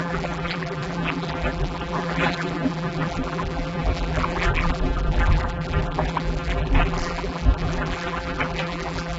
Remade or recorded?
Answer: remade